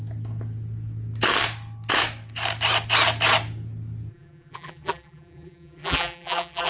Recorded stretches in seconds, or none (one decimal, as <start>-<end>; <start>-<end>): 0.0-4.1